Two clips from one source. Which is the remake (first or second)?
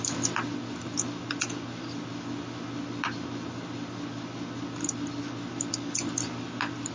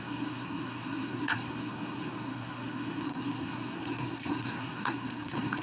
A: second